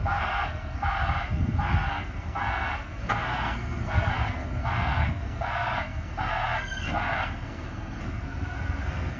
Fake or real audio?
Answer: fake